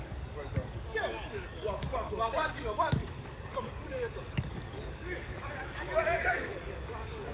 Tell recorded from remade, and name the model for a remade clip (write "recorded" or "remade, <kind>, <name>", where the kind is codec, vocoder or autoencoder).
remade, codec, DAC